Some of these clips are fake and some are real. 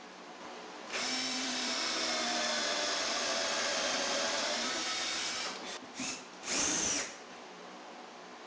fake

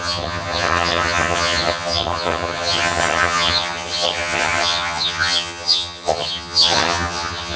fake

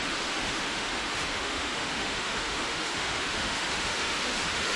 fake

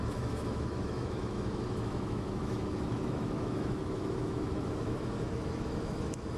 fake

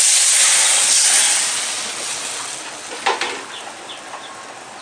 real